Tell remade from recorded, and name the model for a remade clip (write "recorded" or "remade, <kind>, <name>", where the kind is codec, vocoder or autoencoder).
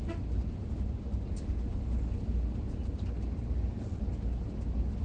recorded